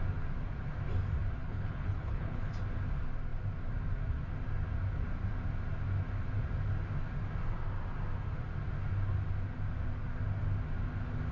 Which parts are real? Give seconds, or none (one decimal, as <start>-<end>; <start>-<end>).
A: 0.0-1.4; 2.5-11.3